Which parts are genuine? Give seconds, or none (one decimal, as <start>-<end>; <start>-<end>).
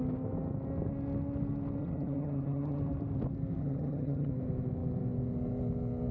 0.0-1.8; 2.8-3.6; 4.3-6.1